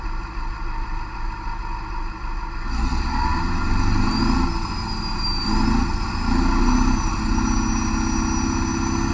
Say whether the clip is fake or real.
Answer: real